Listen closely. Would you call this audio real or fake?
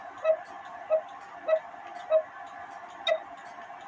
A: real